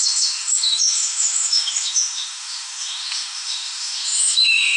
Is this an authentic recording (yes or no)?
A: no